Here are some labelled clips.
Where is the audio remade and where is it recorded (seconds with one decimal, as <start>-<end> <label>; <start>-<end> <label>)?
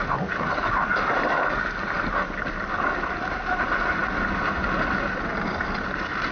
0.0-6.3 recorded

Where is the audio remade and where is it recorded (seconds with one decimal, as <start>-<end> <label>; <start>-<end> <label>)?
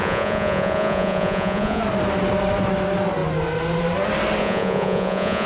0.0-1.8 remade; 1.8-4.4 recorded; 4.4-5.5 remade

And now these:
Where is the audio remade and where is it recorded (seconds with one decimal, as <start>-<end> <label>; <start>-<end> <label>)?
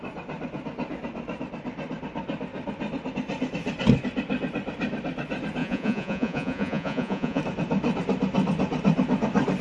0.0-5.6 recorded; 5.6-7.4 remade; 7.4-9.6 recorded